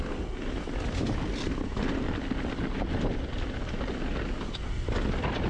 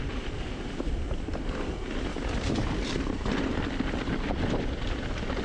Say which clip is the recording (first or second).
first